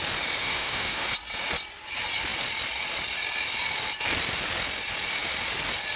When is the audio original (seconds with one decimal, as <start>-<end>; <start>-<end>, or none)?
0.0-0.4; 1.1-6.0

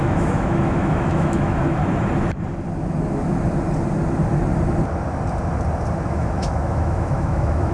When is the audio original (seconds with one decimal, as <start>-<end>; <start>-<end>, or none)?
1.8-6.1

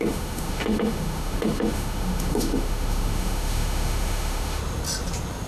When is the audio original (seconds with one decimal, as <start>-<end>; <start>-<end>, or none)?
4.6-5.5

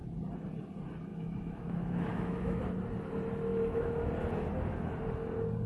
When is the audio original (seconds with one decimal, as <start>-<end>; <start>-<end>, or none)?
0.0-1.1; 2.6-3.5; 4.1-5.7

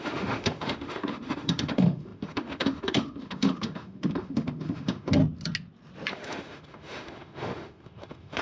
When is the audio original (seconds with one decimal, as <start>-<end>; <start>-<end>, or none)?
5.2-6.1

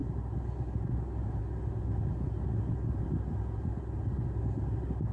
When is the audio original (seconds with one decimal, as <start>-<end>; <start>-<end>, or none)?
0.0-5.1

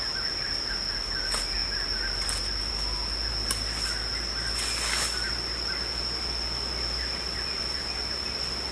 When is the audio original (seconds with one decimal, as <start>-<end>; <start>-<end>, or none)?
0.0-8.7